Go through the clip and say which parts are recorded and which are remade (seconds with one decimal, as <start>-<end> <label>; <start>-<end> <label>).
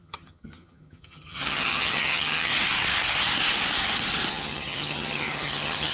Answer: 0.0-2.5 remade; 2.5-4.3 recorded; 4.3-5.9 remade